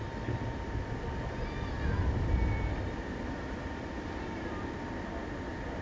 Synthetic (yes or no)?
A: no